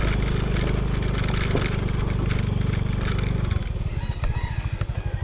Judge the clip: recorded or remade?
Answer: recorded